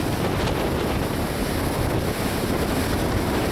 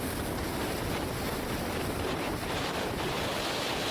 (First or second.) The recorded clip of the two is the first